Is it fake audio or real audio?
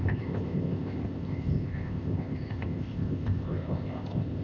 fake